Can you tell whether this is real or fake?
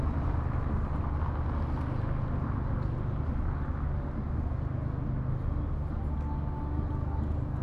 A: real